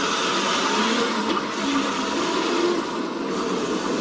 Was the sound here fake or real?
real